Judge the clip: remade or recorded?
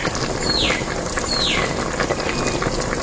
recorded